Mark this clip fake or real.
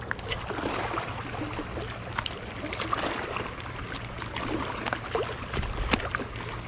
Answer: real